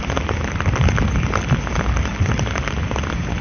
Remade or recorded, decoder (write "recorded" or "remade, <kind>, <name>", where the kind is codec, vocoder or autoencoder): recorded